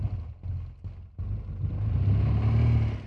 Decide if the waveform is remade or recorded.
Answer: recorded